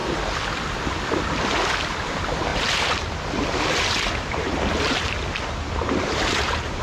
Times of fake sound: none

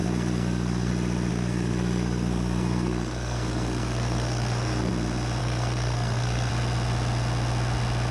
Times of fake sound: 0.0-0.9 (codec, SNAC); 1.3-4.9; 5.4-6.5

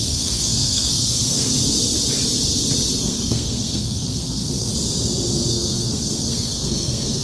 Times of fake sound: 0.0-1.5 (codec, SNAC); 3.0-4.7; 5.5-7.2

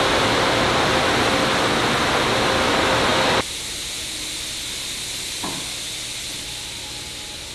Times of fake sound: none

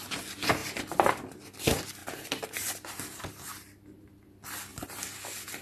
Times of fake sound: none

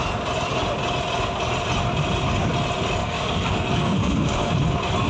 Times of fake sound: 3.0-4.5 (codec, SNAC)

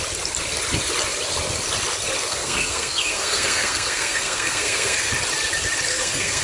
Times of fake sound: 2.2-5.1 (codec, SNAC); 5.9-6.4